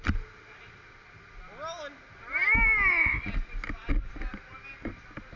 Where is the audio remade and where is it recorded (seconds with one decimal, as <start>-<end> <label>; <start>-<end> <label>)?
0.0-5.4 recorded